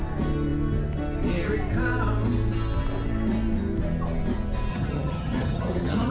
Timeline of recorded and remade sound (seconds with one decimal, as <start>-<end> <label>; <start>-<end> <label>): 0.0-4.7 recorded; 4.7-6.1 remade